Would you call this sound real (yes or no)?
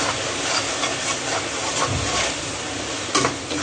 yes